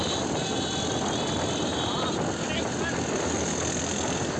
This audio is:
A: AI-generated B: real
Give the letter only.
B